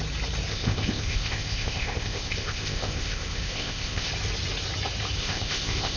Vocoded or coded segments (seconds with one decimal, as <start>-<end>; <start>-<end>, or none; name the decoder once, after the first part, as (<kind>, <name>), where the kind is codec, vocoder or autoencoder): 0.5-4.1 (codec, ZipCodec); 5.2-6.0